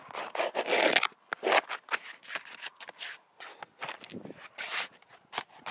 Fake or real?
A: real